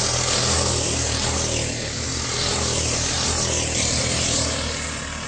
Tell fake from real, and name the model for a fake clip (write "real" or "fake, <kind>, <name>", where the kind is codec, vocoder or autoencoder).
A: real